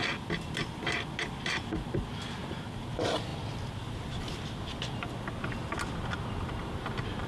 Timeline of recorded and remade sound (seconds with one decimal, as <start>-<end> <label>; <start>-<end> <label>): 0.0-7.3 recorded